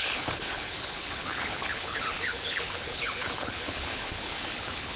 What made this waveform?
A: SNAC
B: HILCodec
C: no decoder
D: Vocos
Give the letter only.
B